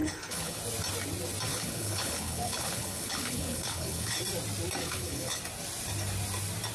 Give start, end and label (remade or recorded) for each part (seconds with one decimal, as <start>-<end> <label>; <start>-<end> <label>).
0.0-0.6 remade; 0.6-1.5 recorded; 1.5-4.2 remade; 4.2-4.8 recorded; 4.8-5.4 remade; 5.4-6.7 recorded